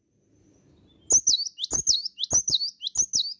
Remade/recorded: recorded